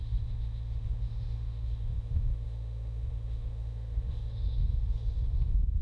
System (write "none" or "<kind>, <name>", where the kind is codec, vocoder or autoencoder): autoencoder, DAC-VAE